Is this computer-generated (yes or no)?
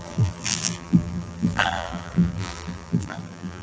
yes